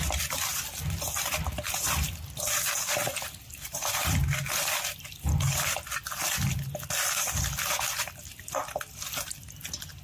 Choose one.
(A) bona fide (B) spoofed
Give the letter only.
A